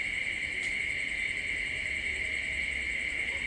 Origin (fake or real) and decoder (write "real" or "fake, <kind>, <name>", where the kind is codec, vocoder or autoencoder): real